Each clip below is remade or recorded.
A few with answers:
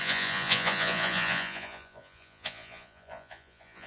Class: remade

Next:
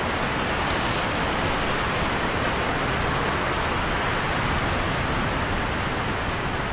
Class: recorded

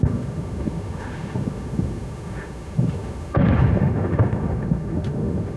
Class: remade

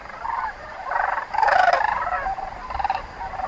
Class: remade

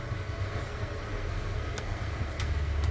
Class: remade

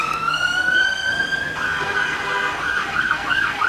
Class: remade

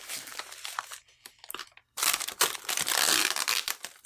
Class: remade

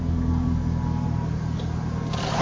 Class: recorded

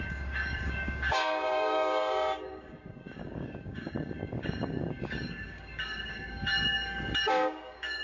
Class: remade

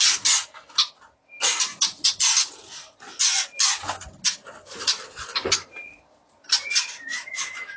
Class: recorded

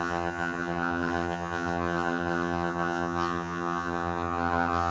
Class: remade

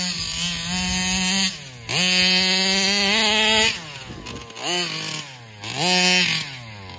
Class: recorded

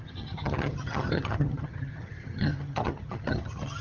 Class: remade